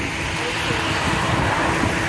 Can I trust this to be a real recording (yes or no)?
yes